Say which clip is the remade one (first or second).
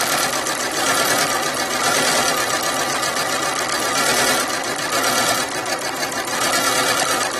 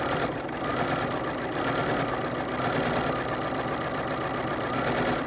first